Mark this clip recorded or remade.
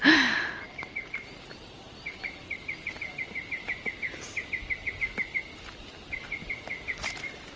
recorded